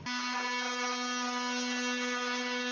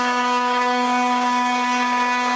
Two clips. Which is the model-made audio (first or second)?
second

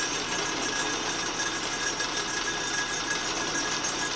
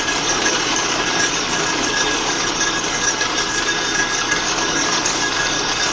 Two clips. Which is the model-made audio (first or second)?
second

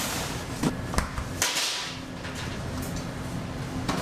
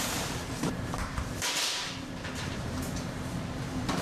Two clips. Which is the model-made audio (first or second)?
second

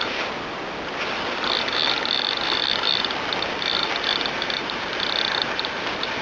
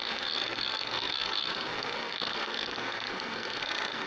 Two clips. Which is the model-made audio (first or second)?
second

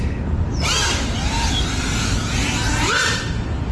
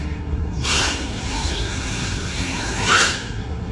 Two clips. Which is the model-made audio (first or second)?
second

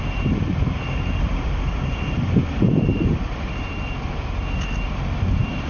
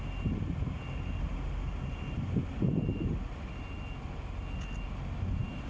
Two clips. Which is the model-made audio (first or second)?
first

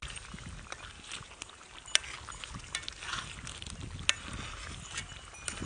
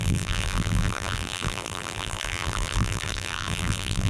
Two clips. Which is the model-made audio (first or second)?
second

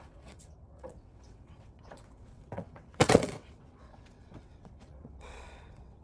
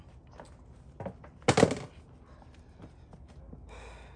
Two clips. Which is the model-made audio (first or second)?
first